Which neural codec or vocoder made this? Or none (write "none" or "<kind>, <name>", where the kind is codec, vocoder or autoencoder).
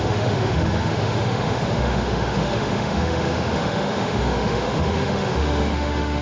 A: autoencoder, DAC-VAE